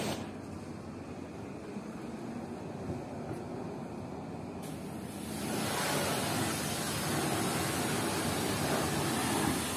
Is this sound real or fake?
real